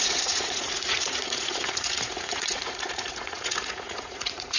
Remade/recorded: remade